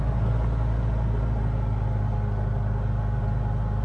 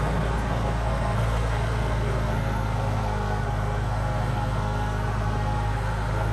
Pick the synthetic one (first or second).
second